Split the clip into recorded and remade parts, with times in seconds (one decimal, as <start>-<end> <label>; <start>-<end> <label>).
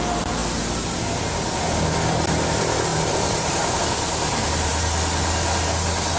0.0-2.9 recorded; 2.9-3.8 remade; 3.8-6.2 recorded